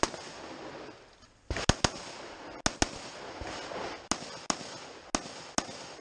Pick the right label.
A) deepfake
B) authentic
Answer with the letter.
B